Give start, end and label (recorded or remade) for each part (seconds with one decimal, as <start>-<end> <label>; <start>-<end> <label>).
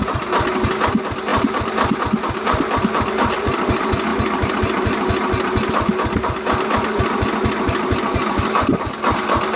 0.0-1.3 recorded; 1.3-2.0 remade; 2.0-4.1 recorded; 4.1-4.6 remade; 4.6-9.6 recorded